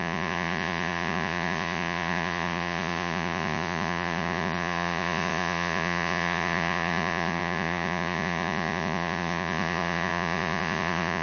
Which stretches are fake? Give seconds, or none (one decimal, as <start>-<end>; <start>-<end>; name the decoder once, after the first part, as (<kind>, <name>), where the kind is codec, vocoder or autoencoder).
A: 0.0-11.2 (vocoder, Vocos)